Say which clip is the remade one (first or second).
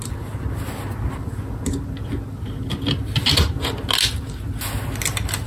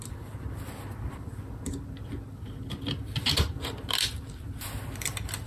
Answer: second